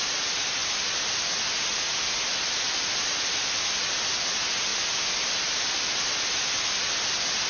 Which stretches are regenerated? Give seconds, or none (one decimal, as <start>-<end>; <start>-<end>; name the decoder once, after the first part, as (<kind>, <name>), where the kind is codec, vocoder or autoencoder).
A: 0.6-1.6 (vocoder, BigVGAN v2); 4.7-7.5